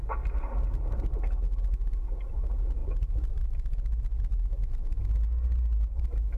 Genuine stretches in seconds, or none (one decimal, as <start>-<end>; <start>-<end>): 0.0-6.4

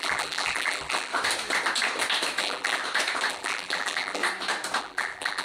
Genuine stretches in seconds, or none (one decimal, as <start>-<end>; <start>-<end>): 1.1-2.4; 2.8-3.3; 4.2-4.8